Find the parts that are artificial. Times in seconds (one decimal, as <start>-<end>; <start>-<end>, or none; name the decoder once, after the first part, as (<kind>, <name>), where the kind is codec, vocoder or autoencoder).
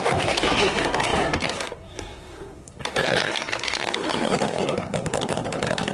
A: 0.0-5.9 (codec, SNAC)